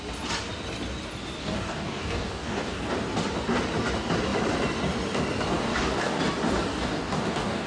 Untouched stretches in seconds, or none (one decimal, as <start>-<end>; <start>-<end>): 0.0-1.4; 2.9-5.5; 6.2-6.7